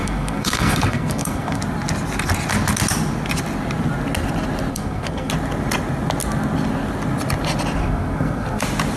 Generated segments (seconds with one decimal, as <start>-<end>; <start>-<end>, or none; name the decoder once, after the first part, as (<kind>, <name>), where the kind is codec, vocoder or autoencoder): 0.0-1.6 (codec, SNAC); 4.7-5.3; 7.8-8.6

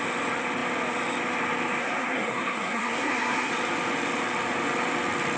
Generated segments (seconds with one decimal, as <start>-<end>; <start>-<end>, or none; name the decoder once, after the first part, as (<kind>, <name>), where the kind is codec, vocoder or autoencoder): 1.8-3.5 (codec, SNAC)